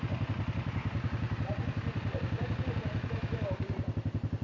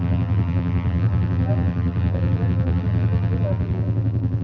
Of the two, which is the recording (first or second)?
first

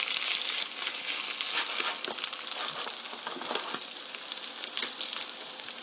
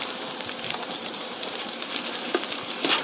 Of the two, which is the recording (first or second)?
first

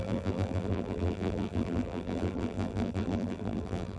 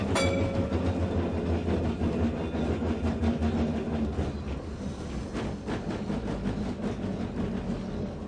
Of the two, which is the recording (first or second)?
second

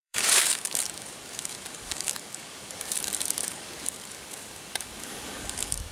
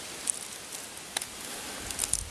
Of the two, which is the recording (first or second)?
second